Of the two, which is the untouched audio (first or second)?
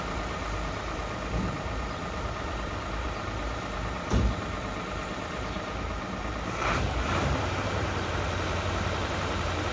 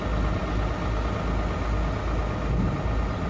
second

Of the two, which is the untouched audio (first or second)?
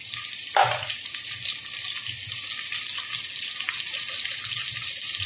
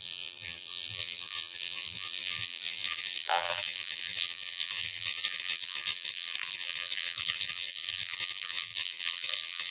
first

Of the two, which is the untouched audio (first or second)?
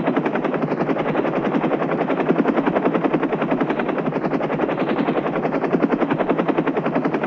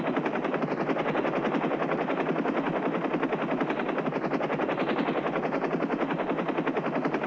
second